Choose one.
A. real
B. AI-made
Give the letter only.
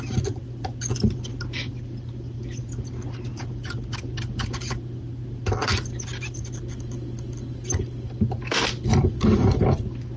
A